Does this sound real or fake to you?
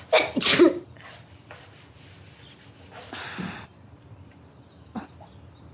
real